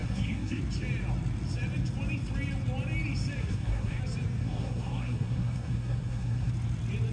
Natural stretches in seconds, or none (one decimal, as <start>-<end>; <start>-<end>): 0.6-3.4; 4.0-4.4; 6.5-7.1